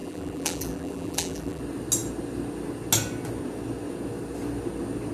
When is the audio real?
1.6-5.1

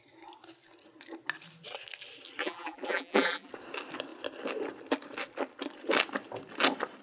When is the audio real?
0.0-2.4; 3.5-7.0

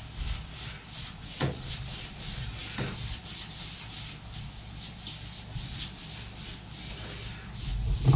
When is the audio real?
0.0-1.0; 1.7-8.2